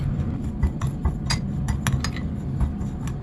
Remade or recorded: recorded